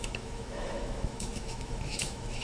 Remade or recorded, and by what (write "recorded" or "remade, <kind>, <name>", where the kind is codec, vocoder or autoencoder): remade, autoencoder, DAC-VAE